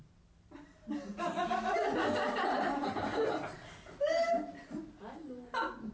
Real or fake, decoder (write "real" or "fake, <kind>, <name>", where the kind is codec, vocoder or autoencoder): real